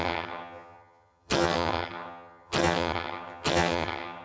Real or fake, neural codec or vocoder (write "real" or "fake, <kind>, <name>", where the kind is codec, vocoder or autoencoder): fake, vocoder, HiFi-GAN